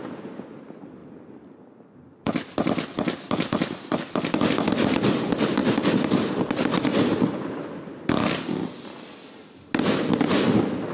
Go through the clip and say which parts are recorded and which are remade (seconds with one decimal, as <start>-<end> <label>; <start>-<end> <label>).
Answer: 0.0-1.0 recorded; 1.0-4.0 remade; 4.0-5.6 recorded; 5.6-8.1 remade; 8.1-10.9 recorded